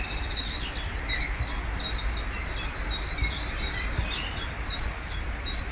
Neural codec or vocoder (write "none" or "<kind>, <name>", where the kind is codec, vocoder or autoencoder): vocoder, BigVGAN v2